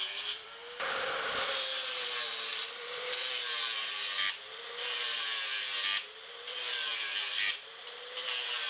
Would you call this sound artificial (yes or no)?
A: yes